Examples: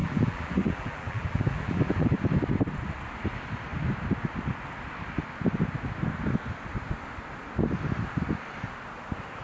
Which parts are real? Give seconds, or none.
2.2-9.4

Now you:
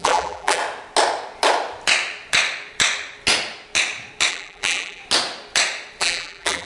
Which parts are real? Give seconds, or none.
0.6-4.3; 5.0-6.0